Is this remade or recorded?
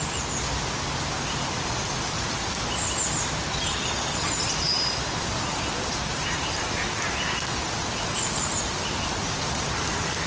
recorded